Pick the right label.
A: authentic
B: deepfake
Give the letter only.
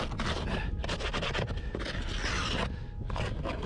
A